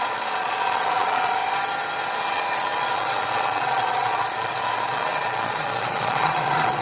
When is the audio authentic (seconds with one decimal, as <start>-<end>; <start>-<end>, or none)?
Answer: 1.4-2.3